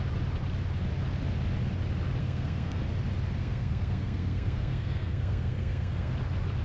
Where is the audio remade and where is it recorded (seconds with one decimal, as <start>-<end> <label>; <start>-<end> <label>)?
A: 0.0-2.2 recorded; 2.2-2.8 remade; 2.8-3.4 recorded; 3.4-6.1 remade; 6.1-6.6 recorded